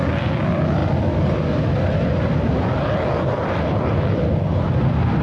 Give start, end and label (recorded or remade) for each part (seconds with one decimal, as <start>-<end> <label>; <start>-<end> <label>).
0.0-5.2 recorded